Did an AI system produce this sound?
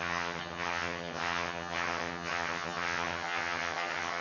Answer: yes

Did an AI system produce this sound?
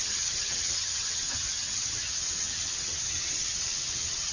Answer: yes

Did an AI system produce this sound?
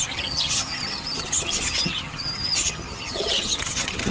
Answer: yes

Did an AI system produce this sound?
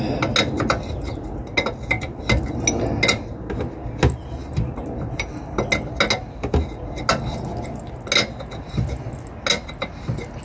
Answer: no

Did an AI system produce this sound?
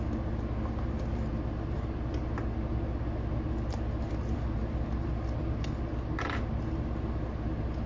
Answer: no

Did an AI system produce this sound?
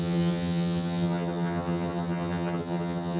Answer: yes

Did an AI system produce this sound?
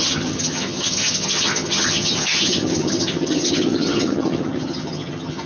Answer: yes